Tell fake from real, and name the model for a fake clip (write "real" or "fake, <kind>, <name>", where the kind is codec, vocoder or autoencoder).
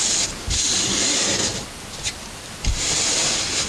real